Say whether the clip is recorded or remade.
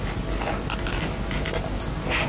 recorded